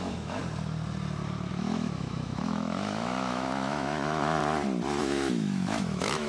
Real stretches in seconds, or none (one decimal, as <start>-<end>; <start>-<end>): 0.4-1.5; 4.4-5.0